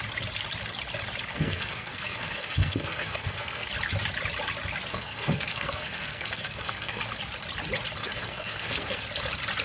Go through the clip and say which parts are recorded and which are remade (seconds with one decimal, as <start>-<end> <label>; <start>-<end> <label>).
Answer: 0.0-1.3 recorded; 1.3-3.7 remade; 3.7-4.9 recorded; 4.9-7.0 remade; 7.0-8.0 recorded; 8.0-9.0 remade; 9.0-9.6 recorded